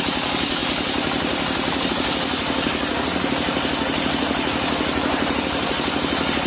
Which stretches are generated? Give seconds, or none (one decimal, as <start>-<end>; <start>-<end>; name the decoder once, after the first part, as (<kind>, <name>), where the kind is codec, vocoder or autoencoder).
none